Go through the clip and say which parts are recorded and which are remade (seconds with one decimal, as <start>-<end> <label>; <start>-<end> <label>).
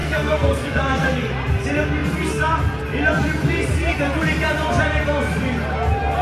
0.0-1.2 remade; 1.2-6.2 recorded